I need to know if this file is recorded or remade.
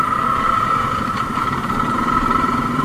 remade